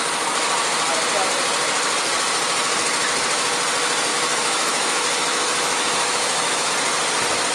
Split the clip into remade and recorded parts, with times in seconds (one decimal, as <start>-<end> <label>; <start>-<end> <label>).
0.0-4.1 recorded; 4.1-6.7 remade; 6.7-7.5 recorded